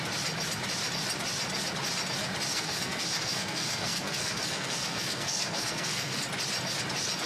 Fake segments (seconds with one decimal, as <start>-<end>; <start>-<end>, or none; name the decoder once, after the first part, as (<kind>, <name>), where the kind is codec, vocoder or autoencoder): 2.5-6.2 (codec, SNAC)